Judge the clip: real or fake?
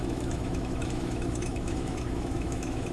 fake